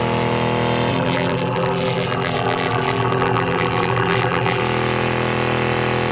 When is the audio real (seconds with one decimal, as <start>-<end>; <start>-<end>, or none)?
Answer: 0.0-0.9; 4.6-6.1